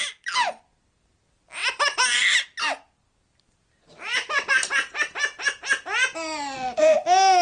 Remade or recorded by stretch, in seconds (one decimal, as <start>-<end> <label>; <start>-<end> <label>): 0.0-7.4 recorded